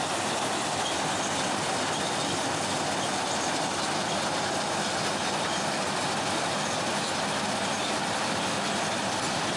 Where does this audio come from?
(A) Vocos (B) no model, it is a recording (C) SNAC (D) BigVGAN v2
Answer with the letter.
B